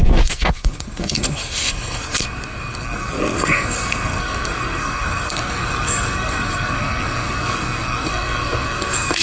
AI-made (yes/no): yes